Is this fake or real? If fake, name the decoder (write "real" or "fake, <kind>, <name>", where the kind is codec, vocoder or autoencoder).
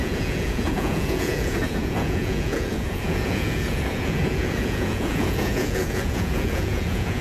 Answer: fake, vocoder, Vocos